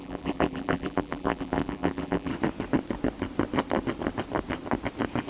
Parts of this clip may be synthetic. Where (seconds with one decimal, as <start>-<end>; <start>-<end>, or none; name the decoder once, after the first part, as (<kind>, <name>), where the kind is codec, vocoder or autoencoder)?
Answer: 0.0-2.3 (vocoder, BigVGAN v2)